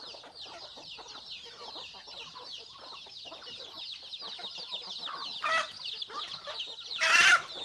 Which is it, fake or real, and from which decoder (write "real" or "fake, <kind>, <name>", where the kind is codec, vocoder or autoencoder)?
real